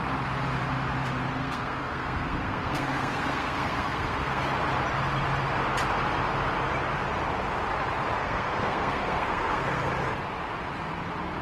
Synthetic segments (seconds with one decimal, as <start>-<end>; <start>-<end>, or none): 1.4-4.4; 8.2-9.9